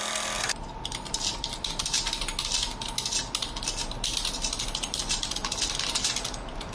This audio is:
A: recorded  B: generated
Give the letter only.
A